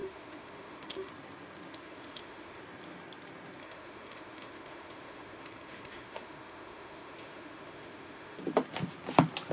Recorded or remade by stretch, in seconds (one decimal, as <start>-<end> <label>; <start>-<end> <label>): 0.0-1.1 remade; 1.1-1.7 recorded; 1.7-2.6 remade; 2.6-3.6 recorded; 3.6-8.4 remade; 8.4-9.5 recorded